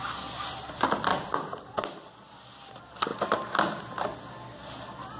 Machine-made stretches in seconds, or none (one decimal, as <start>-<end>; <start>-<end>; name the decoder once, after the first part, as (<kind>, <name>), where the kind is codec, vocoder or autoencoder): 1.1-1.8 (vocoder, Vocos)